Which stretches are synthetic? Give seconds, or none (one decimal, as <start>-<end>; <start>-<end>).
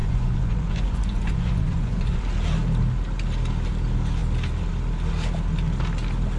0.0-2.2